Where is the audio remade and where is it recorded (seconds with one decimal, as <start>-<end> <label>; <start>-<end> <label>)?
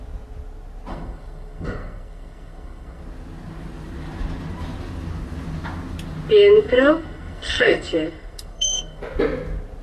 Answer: 0.0-0.9 recorded; 0.9-3.0 remade; 3.0-6.6 recorded; 6.6-9.0 remade; 9.0-9.8 recorded